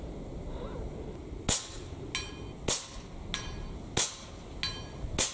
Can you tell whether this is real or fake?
real